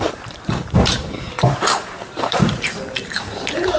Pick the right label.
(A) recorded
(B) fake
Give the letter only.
B